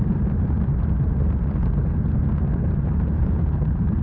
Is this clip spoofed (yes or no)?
yes